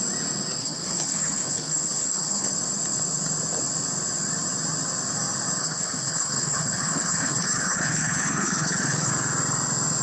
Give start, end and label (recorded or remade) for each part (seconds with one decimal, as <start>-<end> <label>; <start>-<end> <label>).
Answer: 0.0-0.6 recorded; 0.6-2.5 remade; 2.5-5.6 recorded; 5.6-9.1 remade; 9.1-10.0 recorded